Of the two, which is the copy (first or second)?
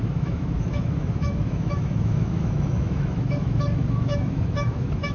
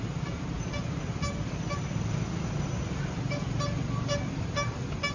first